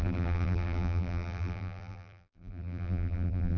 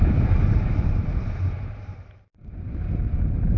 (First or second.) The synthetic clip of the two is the first